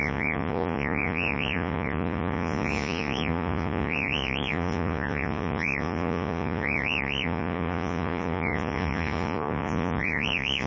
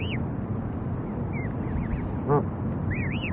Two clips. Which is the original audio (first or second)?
second